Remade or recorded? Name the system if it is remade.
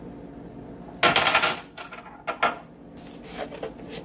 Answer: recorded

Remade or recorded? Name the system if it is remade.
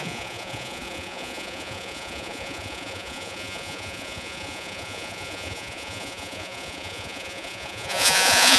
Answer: remade, vocoder, Vocos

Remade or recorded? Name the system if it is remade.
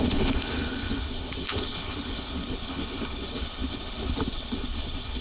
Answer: remade, codec, HILCodec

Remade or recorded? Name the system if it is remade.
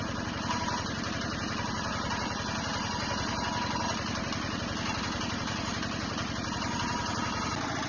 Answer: recorded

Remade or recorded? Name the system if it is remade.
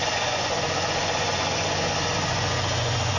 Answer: remade, vocoder, Vocos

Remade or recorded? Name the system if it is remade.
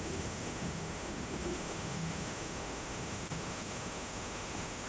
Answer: remade, autoencoder, DAC-VAE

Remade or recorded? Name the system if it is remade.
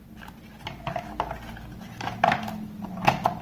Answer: recorded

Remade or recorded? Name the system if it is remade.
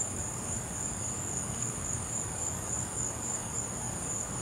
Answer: remade, codec, DAC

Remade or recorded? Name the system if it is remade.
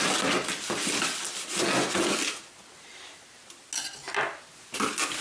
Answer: recorded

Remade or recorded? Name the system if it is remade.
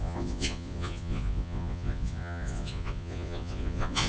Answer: remade, vocoder, Vocos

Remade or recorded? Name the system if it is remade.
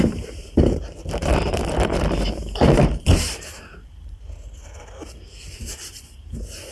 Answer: remade, vocoder, BigVGAN v2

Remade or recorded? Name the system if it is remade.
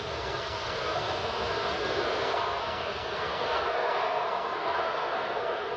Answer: remade, codec, SNAC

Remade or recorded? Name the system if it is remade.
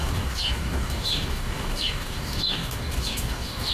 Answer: remade, codec, DAC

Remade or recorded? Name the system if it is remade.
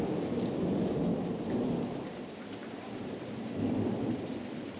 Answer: remade, vocoder, BigVGAN v2